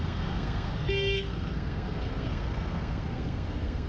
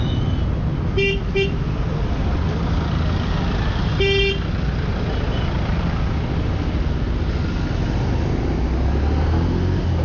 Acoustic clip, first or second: second